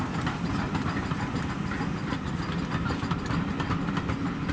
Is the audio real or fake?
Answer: real